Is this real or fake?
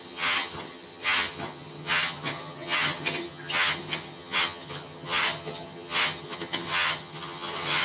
fake